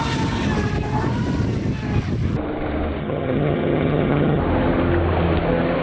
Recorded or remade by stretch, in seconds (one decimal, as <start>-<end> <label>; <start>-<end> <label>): 0.0-3.0 recorded; 3.0-4.4 remade; 4.4-5.8 recorded